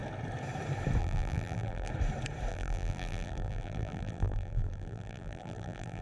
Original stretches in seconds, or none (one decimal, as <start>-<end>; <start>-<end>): 0.0-1.0; 1.9-2.5